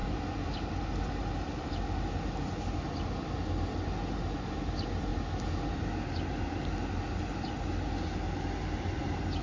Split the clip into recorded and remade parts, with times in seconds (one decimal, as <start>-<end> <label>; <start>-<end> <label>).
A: 0.0-9.4 recorded